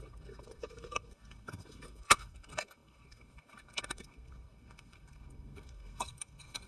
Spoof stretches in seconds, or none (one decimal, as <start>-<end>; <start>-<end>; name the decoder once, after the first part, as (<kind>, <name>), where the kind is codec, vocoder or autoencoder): 0.0-6.7 (codec, SNAC)